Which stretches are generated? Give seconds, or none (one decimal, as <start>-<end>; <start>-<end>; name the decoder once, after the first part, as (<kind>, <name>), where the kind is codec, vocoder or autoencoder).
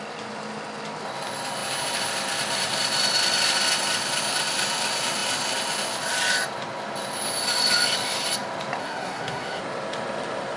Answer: 8.8-9.6 (codec, SNAC)